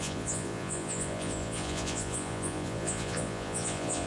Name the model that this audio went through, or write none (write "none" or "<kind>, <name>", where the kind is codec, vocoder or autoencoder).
vocoder, Vocos